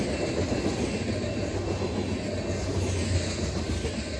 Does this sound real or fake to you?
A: real